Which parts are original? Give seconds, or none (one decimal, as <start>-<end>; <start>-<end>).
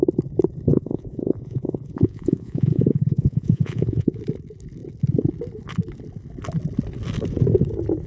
0.0-0.7; 4.2-8.1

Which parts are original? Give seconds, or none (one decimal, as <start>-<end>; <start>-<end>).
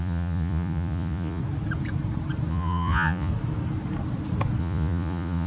1.4-2.5; 3.3-4.6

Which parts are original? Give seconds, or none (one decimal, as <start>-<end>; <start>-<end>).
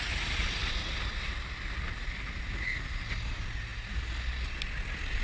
0.0-5.2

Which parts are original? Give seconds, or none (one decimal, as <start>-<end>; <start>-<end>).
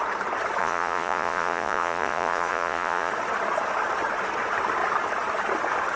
0.0-0.6; 3.1-6.0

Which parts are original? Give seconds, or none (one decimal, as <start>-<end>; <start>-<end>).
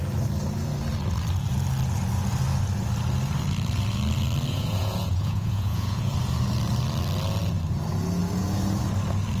0.0-4.5; 6.1-9.4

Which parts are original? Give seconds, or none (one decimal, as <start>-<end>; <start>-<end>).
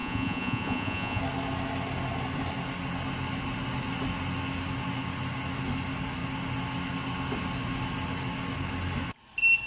1.2-9.7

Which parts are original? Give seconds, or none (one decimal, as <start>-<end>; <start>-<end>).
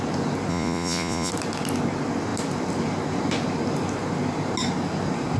0.0-0.5; 1.3-5.4